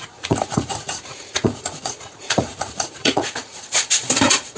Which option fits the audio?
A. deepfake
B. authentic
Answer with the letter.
A